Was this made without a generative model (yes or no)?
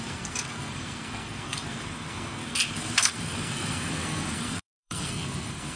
no